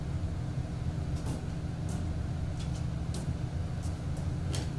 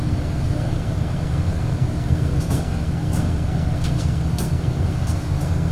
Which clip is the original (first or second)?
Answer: first